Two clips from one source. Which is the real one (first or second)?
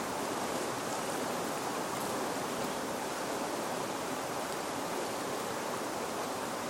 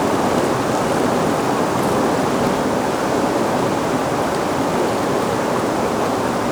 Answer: second